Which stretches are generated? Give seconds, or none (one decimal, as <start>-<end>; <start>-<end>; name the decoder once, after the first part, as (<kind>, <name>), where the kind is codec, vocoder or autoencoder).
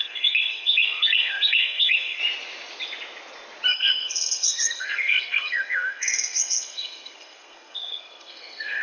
0.0-2.2 (codec, SNAC); 3.7-8.8